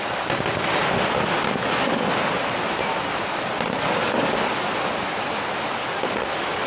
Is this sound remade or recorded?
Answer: recorded